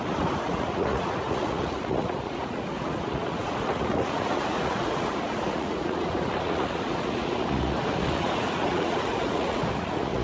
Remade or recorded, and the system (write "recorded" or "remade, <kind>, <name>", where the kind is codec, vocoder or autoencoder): remade, vocoder, Vocos